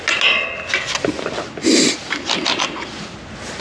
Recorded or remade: recorded